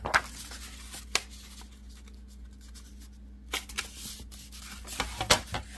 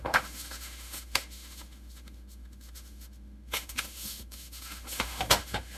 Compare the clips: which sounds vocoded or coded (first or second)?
second